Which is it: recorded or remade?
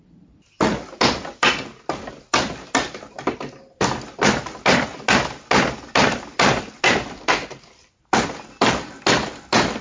recorded